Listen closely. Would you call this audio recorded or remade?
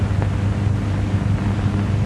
recorded